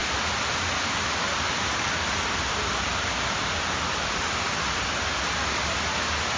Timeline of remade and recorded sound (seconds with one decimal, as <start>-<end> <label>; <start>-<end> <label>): 0.0-6.4 recorded